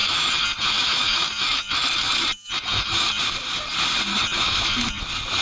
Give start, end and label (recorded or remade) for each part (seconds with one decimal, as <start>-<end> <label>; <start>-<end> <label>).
0.0-3.2 remade; 3.2-4.1 recorded; 4.1-5.0 remade; 5.0-5.4 recorded